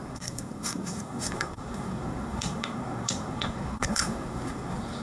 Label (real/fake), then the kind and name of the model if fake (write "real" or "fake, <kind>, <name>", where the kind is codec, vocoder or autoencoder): fake, codec, SNAC